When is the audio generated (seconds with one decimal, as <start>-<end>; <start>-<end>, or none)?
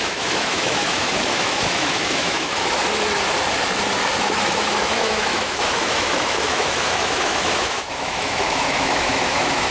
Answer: 0.0-2.8; 4.2-9.7